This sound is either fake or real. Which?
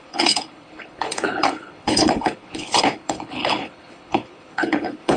fake